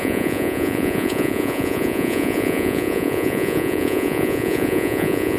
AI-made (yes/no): yes